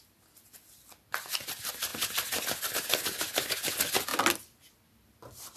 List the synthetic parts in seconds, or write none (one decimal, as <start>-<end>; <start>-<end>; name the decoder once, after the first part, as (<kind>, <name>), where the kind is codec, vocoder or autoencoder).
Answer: none